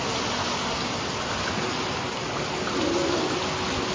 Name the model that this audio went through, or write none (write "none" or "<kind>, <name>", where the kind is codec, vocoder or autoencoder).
none